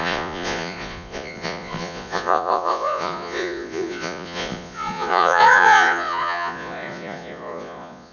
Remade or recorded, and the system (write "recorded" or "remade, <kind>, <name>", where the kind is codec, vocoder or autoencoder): remade, vocoder, Vocos